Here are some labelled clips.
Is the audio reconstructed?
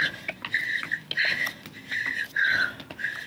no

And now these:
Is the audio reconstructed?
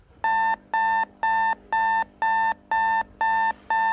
no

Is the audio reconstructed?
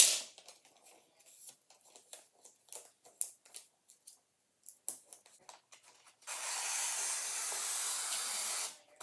no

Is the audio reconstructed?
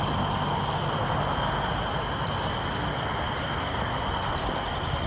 no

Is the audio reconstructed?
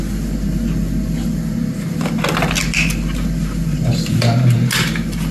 no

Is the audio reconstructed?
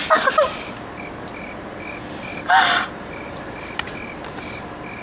no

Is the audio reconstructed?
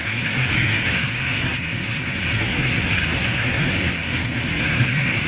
yes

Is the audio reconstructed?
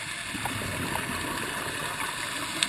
no